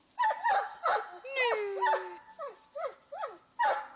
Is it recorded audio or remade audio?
recorded